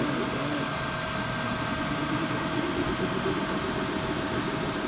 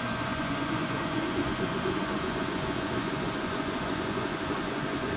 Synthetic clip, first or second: second